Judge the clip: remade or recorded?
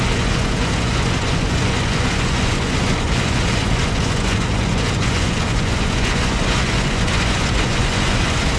remade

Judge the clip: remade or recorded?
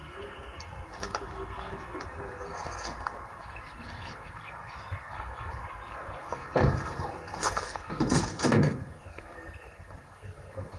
remade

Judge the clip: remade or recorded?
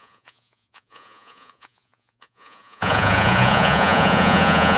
remade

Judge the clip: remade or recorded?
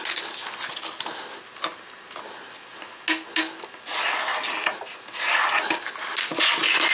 recorded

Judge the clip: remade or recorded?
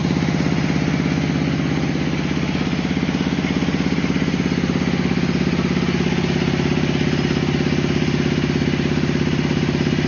recorded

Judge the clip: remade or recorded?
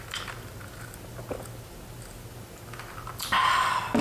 recorded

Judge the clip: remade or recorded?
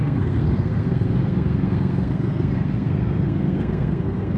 remade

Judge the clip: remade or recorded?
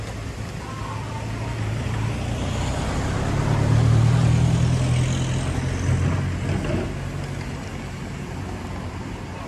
recorded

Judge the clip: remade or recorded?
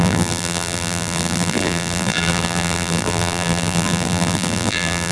remade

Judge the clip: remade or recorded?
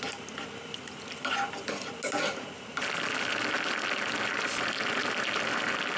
recorded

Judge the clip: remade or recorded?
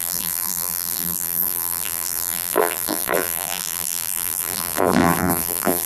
remade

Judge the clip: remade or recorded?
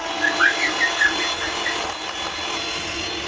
recorded